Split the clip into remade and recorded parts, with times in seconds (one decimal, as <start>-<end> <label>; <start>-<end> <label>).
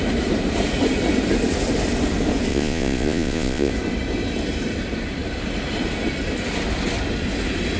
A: 0.0-2.5 recorded; 2.5-3.7 remade; 3.7-7.8 recorded